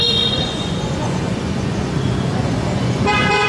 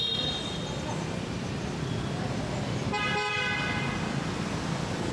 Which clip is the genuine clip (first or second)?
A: second